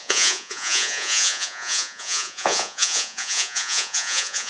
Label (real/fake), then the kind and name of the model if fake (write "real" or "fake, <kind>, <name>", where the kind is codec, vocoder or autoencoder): fake, vocoder, Vocos